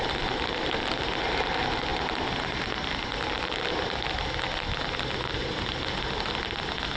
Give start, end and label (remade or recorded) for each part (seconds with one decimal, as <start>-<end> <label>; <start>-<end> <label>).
0.0-7.0 recorded